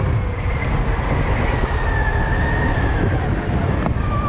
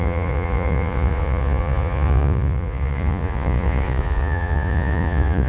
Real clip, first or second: first